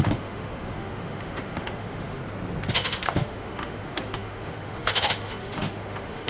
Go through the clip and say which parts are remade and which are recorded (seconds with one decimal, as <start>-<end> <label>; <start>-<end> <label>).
0.0-2.2 remade; 2.2-2.7 recorded; 2.7-6.3 remade